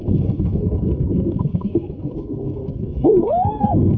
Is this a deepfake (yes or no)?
yes